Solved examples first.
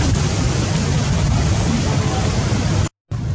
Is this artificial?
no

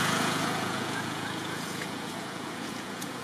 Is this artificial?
yes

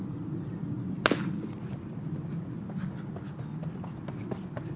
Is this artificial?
no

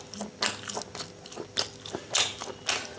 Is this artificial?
no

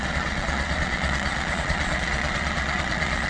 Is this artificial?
yes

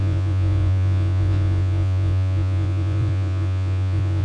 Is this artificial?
yes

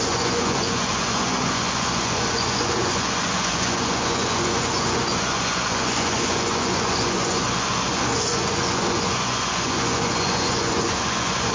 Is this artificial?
yes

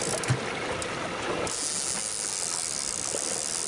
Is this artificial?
no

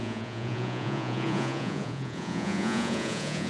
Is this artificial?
yes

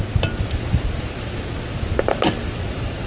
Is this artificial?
no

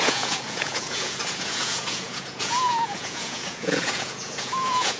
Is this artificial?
yes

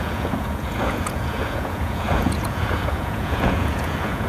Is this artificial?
yes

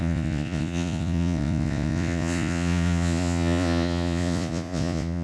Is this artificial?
yes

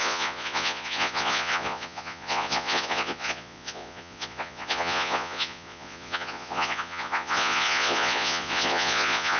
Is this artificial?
yes